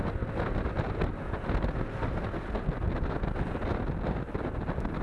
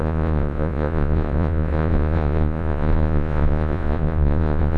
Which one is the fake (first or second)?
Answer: second